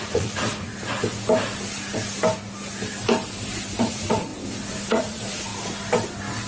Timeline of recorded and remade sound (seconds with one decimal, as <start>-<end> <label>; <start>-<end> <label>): 0.0-0.7 remade; 0.7-3.8 recorded; 3.8-4.3 remade; 4.3-4.9 recorded; 4.9-5.5 remade; 5.5-6.5 recorded